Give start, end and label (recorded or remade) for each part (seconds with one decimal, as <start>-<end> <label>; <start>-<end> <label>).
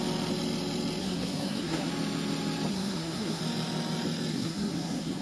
0.0-1.0 recorded; 1.0-1.9 remade; 1.9-2.7 recorded; 2.7-3.4 remade; 3.4-4.3 recorded; 4.3-5.2 remade